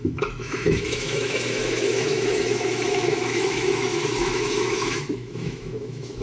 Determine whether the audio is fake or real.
fake